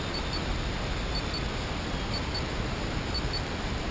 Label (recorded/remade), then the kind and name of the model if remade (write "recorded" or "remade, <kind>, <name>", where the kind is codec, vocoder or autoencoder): recorded